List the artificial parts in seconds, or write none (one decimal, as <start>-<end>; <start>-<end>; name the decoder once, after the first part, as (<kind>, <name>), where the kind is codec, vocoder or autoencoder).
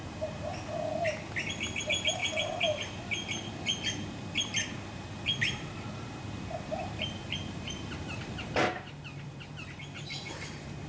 0.0-0.5 (vocoder, BigVGAN v2); 1.8-10.9